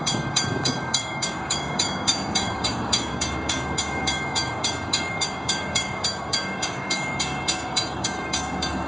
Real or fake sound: fake